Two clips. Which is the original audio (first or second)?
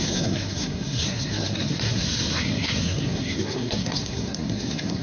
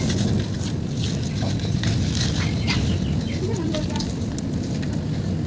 second